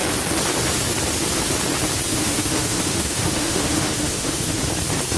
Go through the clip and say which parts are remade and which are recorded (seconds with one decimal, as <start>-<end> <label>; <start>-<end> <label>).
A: 0.0-2.1 recorded; 2.1-4.6 remade; 4.6-5.2 recorded